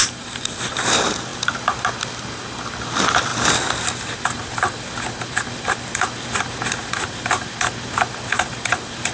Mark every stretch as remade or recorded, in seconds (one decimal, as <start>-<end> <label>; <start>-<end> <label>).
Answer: 0.0-9.1 recorded